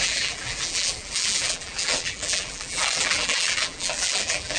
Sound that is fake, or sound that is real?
fake